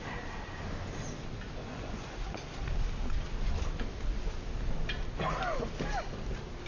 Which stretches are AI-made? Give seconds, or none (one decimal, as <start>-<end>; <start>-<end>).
1.6-2.2